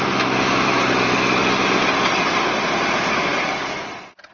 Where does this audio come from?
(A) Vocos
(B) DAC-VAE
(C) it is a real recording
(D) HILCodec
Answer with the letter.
C